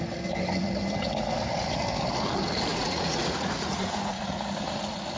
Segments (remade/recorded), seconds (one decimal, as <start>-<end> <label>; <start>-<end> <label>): 0.0-2.7 recorded; 2.7-4.3 remade; 4.3-5.2 recorded